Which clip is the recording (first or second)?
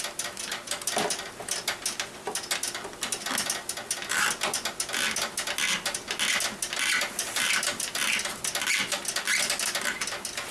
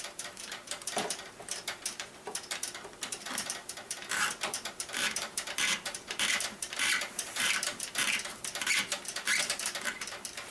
first